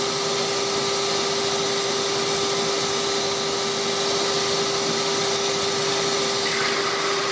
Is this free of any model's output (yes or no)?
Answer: yes